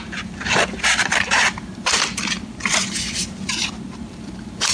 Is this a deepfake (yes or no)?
yes